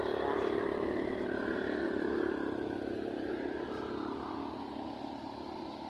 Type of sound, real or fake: real